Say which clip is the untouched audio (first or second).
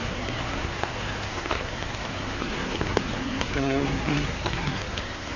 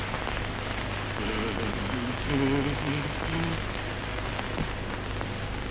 second